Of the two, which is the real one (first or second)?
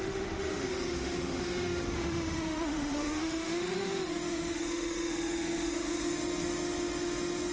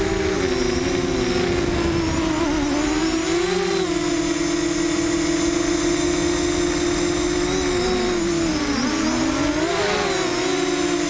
second